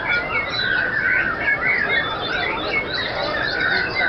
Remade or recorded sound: recorded